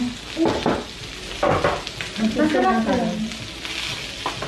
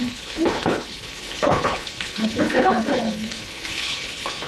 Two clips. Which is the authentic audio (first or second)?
first